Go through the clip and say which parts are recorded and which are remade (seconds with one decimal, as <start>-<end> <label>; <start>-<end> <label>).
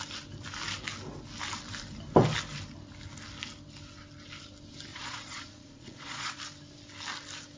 0.0-4.9 recorded; 4.9-6.4 remade; 6.4-7.6 recorded